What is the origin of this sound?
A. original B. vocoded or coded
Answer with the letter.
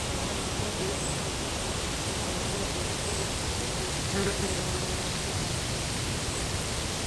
A